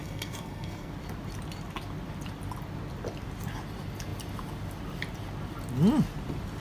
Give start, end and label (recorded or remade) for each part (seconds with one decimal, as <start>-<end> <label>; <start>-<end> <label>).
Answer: 0.0-0.9 remade; 0.9-6.6 recorded